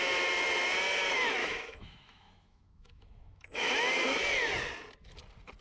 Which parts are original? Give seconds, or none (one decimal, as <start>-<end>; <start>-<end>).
0.0-1.4; 3.7-5.6

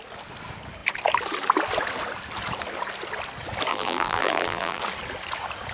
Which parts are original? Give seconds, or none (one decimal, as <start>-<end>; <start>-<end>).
0.0-3.7; 4.8-5.7

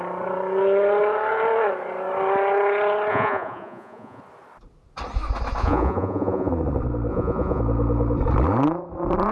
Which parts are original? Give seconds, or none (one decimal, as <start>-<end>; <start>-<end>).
0.0-3.1; 4.2-5.6; 6.5-7.1; 7.6-9.3

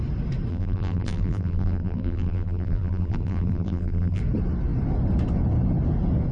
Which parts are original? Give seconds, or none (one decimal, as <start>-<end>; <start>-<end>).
0.0-0.5; 4.2-6.3